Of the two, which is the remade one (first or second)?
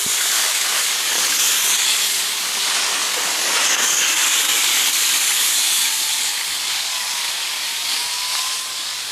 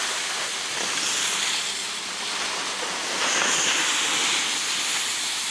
first